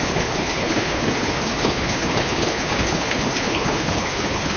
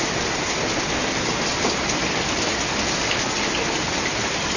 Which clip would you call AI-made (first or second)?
first